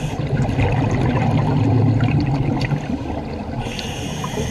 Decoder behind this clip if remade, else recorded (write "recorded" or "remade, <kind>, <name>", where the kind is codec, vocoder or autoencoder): recorded